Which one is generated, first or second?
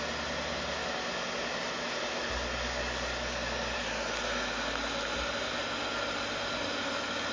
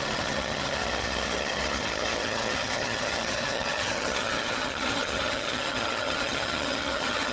second